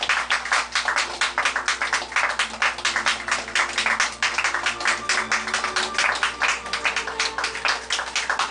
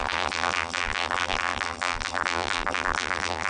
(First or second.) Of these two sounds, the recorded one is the first